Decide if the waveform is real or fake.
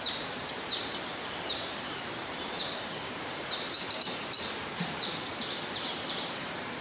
fake